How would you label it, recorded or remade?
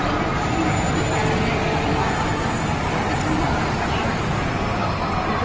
recorded